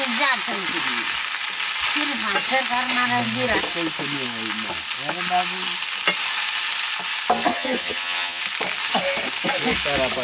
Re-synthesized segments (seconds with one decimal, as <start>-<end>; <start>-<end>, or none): 7.5-8.4

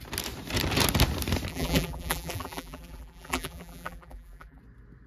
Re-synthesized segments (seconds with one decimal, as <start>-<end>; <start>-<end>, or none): 1.5-4.6

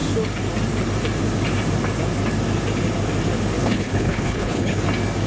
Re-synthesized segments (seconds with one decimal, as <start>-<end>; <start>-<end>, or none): 3.6-4.8

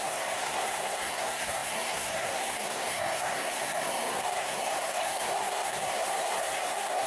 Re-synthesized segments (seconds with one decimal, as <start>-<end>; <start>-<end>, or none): 0.0-7.1

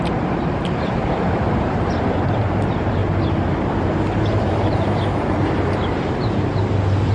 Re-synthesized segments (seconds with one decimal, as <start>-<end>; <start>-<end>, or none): 0.0-3.0; 4.4-7.1

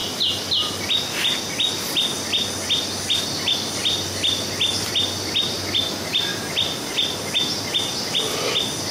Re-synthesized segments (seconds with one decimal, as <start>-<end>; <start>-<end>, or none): none